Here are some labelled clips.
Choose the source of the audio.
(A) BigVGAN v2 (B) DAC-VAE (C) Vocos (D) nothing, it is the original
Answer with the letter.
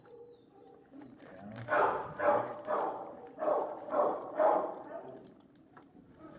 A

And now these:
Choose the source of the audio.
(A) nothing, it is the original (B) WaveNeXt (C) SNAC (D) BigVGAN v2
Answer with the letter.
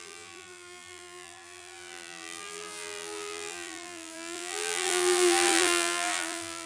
D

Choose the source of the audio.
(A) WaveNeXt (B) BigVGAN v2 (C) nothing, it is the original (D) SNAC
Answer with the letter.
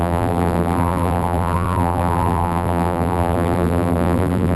B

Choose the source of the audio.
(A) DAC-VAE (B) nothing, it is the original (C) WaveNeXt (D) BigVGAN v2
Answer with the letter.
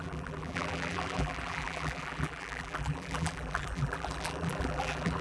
D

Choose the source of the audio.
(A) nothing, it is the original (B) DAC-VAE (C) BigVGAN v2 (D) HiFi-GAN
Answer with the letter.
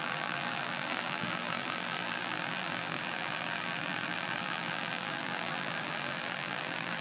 C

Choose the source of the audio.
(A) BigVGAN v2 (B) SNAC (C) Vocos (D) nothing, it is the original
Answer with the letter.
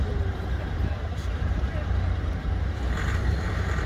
A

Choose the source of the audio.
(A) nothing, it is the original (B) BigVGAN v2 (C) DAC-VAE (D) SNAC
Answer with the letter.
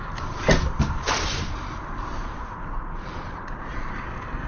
B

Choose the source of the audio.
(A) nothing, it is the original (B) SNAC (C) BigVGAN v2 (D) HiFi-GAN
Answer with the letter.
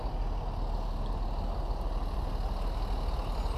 A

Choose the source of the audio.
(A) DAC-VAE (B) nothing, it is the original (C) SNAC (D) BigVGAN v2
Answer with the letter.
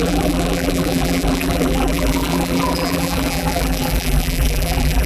D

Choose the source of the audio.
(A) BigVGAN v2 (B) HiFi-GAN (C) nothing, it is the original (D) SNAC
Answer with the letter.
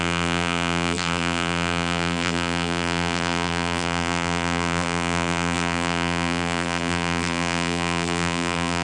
A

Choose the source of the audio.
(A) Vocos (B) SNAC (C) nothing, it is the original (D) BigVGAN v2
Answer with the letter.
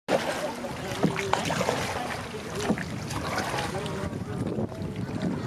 C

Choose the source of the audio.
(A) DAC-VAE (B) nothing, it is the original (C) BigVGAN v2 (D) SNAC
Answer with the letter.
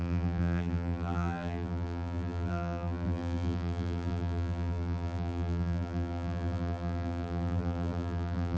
C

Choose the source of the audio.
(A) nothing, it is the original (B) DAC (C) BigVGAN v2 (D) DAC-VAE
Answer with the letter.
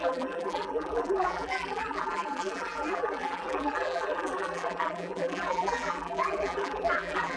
C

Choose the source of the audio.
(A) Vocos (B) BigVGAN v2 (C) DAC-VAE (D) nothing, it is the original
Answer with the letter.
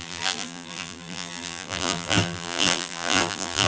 B